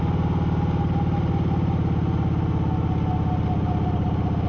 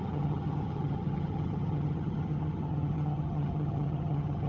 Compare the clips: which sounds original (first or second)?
first